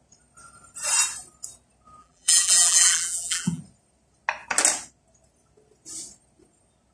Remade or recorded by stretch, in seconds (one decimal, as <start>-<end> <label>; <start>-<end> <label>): 0.0-2.0 recorded; 2.0-3.6 remade; 3.6-6.9 recorded